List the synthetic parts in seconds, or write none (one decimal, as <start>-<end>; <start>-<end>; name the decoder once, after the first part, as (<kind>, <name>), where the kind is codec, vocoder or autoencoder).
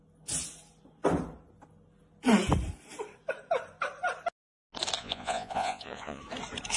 5.0-6.2 (vocoder, Vocos)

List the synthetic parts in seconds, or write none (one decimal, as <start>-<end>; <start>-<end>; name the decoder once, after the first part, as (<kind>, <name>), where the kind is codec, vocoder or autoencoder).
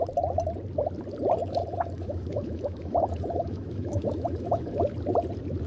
1.4-4.8 (autoencoder, DAC-VAE)